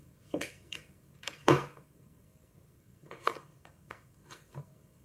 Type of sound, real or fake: fake